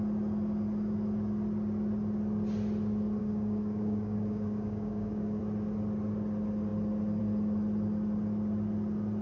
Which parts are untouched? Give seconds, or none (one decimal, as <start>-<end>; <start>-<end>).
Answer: 0.0-3.2; 5.4-9.2